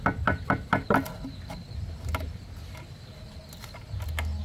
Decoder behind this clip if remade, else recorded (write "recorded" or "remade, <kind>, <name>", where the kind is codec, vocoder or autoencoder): recorded